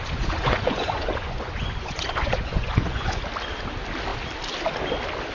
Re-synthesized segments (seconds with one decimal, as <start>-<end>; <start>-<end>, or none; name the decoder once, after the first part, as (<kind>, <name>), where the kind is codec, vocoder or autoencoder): 0.0-3.2 (vocoder, Vocos)

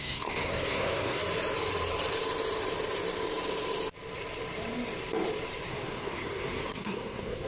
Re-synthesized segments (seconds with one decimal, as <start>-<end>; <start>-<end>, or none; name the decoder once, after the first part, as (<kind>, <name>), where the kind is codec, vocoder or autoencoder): 0.0-1.2 (codec, SNAC); 5.7-7.5

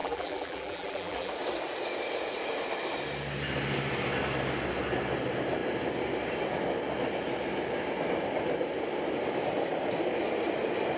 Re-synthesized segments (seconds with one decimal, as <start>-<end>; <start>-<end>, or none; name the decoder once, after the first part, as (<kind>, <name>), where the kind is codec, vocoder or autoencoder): 0.0-1.3 (vocoder, BigVGAN v2)

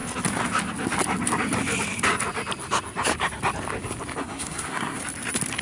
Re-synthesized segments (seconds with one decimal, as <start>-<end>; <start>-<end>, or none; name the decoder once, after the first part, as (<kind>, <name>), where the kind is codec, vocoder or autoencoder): 4.2-5.0 (codec, SNAC)

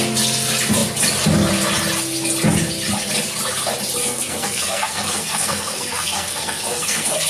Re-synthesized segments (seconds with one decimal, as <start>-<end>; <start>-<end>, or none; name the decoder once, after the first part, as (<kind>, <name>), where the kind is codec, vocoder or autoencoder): 4.0-7.3 (codec, SNAC)

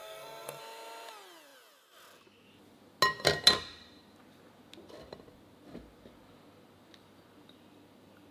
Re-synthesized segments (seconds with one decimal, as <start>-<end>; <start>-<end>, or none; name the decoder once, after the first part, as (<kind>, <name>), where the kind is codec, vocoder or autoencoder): 0.0-0.6 (codec, SNAC)

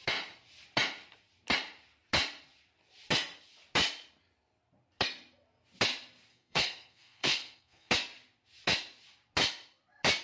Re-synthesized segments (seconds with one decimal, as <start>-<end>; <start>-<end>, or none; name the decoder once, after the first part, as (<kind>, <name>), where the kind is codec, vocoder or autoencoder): 6.3-7.9 (codec, SNAC)

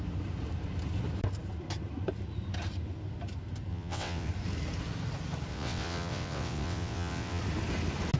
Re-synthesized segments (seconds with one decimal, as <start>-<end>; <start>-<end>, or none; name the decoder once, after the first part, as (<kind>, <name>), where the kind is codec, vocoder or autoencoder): 3.7-4.3 (vocoder, WaveNeXt); 5.5-7.4